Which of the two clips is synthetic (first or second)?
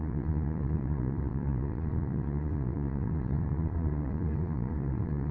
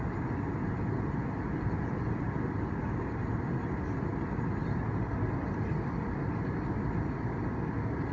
first